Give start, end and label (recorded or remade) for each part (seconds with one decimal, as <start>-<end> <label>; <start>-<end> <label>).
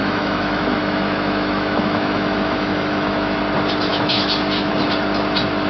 0.0-3.4 remade; 3.4-3.9 recorded; 3.9-4.7 remade; 4.7-5.7 recorded